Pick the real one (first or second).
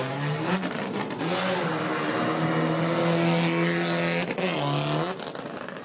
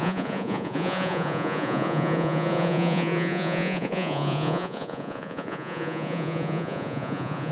first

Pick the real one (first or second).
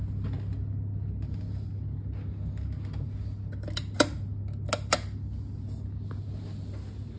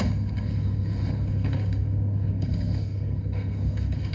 first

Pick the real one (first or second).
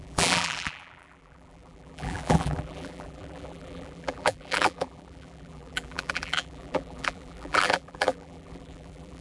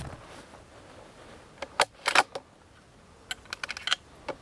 second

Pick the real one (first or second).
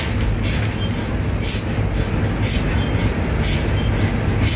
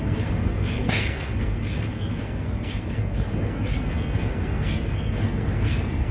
first